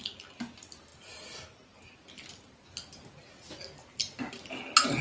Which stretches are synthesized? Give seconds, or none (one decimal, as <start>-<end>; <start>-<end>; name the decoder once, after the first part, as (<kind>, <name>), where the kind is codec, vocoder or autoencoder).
none